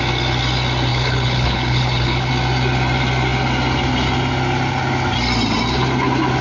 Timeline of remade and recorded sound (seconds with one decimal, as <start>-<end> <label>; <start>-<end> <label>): 0.0-0.9 recorded; 0.9-2.3 remade; 2.3-6.4 recorded